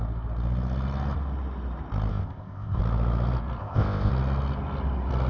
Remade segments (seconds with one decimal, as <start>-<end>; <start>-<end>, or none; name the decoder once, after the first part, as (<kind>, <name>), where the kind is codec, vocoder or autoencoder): 2.1-2.8 (codec, ZipCodec); 3.6-4.1